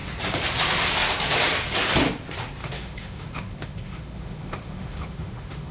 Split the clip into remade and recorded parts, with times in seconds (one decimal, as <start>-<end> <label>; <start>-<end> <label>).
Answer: 0.0-2.6 recorded; 2.6-5.7 remade